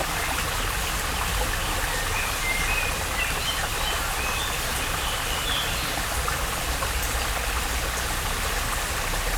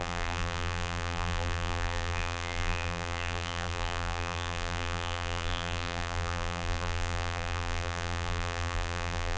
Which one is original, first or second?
first